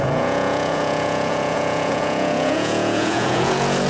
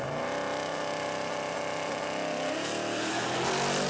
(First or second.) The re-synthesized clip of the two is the first